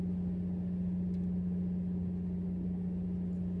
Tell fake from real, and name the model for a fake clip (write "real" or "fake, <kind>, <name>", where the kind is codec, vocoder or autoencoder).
real